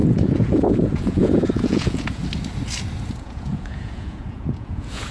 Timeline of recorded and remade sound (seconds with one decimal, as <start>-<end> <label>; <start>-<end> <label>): 0.0-2.2 remade; 2.2-3.2 recorded; 3.2-5.1 remade